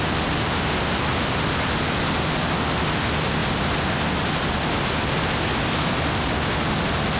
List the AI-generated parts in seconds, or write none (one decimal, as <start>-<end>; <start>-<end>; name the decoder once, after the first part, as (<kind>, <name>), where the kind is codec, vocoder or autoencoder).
none